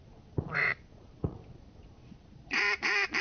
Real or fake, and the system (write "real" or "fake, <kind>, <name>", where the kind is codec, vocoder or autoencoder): fake, vocoder, Vocos